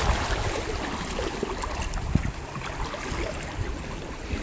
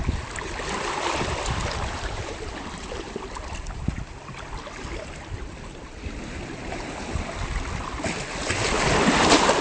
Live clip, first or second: first